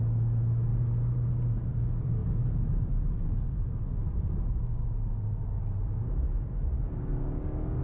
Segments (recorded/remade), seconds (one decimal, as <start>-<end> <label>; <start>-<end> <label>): 0.0-7.8 recorded